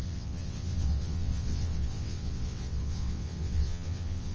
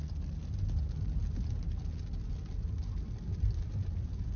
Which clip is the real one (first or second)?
second